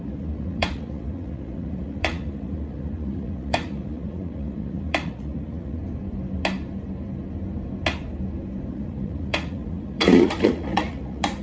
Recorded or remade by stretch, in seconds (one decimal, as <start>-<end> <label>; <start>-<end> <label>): 0.0-5.8 remade; 5.8-8.7 recorded; 8.7-11.4 remade